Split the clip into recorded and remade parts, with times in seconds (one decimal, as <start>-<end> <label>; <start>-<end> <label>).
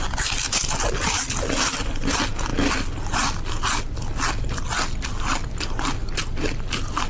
0.0-7.1 recorded